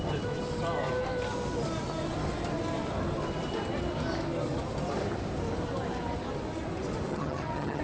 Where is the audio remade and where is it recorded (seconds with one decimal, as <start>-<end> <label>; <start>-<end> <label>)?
0.0-7.1 recorded; 7.1-7.8 remade